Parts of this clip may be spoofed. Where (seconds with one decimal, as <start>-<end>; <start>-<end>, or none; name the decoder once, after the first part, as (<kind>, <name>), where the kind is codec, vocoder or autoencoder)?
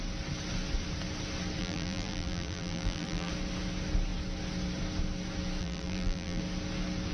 1.6-3.3 (vocoder, BigVGAN v2); 5.6-6.4